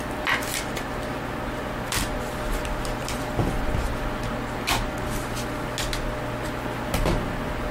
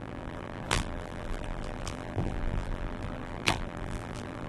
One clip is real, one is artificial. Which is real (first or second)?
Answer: first